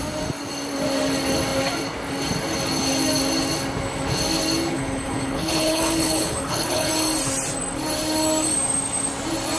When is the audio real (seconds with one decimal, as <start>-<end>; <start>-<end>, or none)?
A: 0.0-4.7; 6.9-9.6